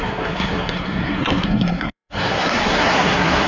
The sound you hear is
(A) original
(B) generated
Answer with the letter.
B